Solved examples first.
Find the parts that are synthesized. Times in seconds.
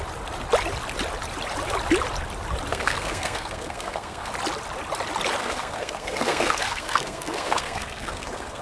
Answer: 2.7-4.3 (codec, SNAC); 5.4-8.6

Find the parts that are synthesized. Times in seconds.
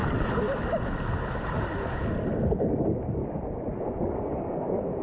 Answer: 2.7-3.2 (codec, DAC); 4.2-5.0